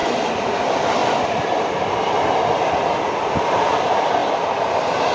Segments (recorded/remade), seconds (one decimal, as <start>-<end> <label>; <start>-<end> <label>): 0.0-0.6 remade; 0.6-1.0 recorded; 1.0-2.8 remade; 2.8-5.1 recorded